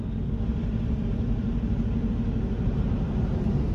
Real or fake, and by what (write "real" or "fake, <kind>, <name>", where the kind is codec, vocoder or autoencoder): real